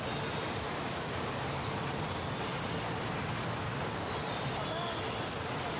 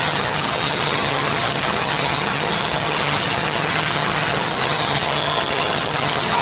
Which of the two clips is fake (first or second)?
second